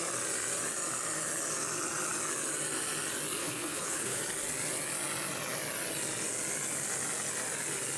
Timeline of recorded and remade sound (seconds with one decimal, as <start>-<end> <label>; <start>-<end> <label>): 0.0-3.4 recorded; 3.4-4.2 remade; 4.2-8.0 recorded